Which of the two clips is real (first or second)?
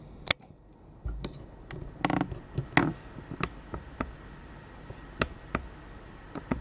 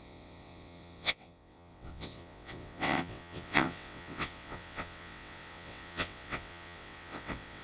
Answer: first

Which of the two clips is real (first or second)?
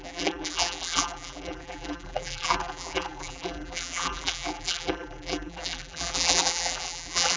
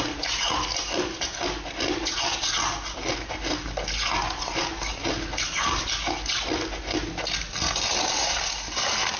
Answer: second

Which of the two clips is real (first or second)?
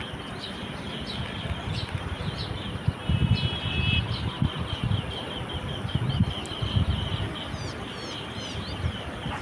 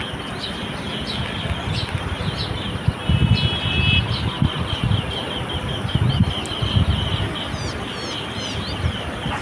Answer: second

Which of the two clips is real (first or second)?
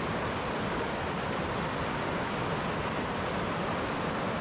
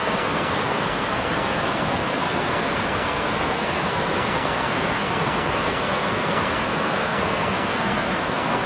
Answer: first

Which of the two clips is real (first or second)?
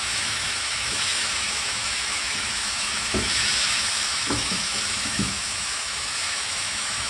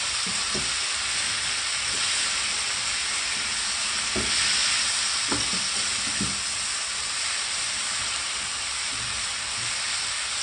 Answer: second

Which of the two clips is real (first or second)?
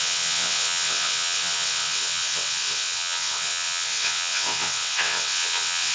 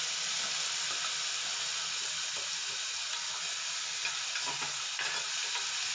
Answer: second